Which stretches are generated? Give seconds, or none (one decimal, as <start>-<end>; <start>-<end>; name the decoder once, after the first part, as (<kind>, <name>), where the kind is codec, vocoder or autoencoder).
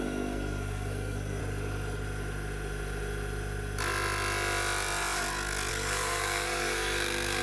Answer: 0.0-1.4 (codec, SNAC); 5.7-7.4